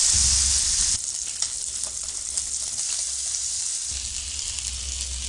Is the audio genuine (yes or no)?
yes